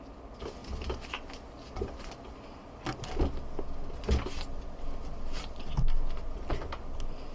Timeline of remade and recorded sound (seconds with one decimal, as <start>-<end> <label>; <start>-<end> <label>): 0.0-7.3 recorded